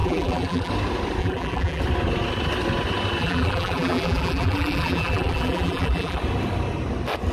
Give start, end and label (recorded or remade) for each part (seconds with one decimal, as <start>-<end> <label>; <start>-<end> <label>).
0.0-0.7 remade; 0.7-1.2 recorded; 1.2-1.8 remade; 1.8-3.2 recorded; 3.2-6.2 remade; 6.2-7.3 recorded